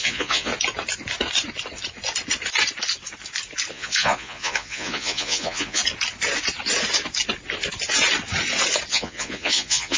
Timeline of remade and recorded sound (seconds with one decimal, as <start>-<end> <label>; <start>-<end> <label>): 0.0-0.5 remade; 0.5-3.7 recorded; 3.7-5.8 remade; 5.8-8.9 recorded; 8.9-10.0 remade